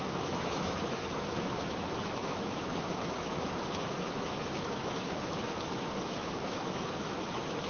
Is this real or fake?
fake